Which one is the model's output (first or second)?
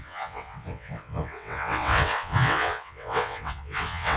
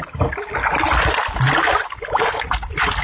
first